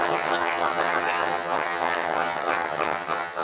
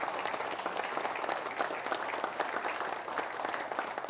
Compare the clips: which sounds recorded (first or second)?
second